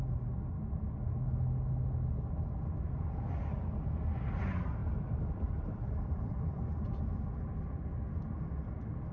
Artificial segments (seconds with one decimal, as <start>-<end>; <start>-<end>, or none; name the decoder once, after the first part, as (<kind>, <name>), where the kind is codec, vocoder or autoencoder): 4.8-7.0 (vocoder, BigVGAN v2)